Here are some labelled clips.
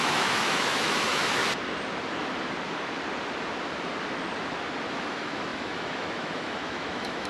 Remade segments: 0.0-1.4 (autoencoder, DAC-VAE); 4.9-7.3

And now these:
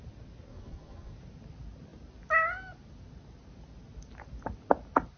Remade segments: 0.5-1.1 (vocoder, Vocos)

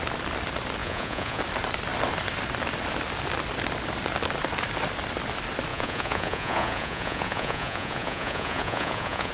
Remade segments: 0.8-1.4 (vocoder, Vocos); 5.7-9.3